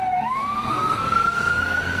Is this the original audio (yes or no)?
no